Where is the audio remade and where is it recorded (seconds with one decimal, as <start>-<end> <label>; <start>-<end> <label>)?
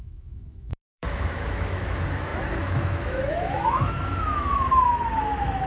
0.0-5.7 remade